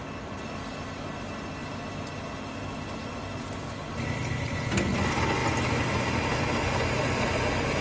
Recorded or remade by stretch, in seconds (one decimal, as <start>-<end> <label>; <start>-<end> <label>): 0.0-7.8 recorded